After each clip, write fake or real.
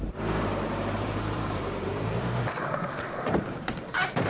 fake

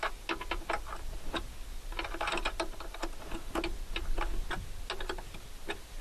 real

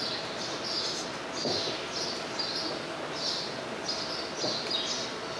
real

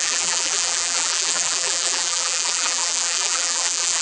fake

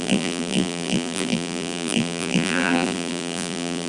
fake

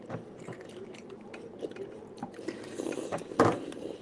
fake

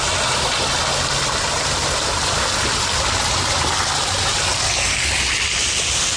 real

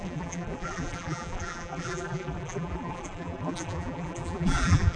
fake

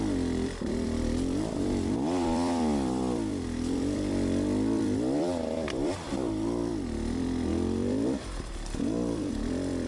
fake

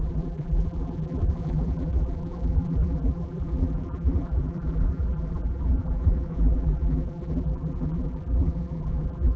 fake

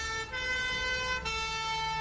real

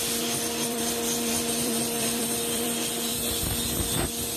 fake